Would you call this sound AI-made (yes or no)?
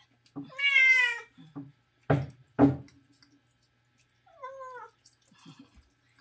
no